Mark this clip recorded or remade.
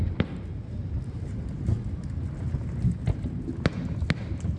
recorded